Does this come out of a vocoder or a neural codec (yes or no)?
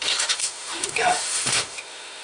yes